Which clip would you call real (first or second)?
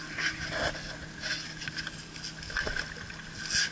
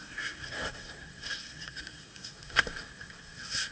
first